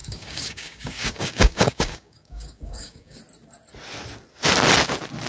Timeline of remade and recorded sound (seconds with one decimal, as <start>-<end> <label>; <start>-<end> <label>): 0.0-3.2 remade; 3.2-5.3 recorded